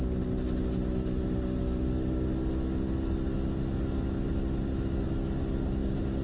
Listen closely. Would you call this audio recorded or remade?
recorded